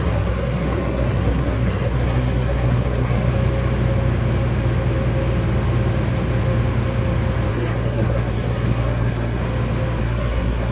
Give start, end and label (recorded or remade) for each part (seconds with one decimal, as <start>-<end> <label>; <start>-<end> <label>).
0.0-3.3 remade; 3.3-7.5 recorded; 7.5-9.4 remade; 9.4-10.0 recorded; 10.0-10.7 remade